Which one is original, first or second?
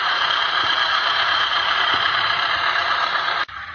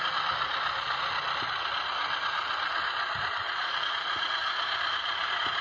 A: second